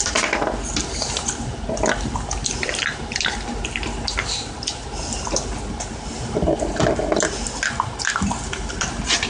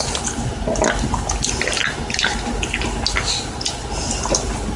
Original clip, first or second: second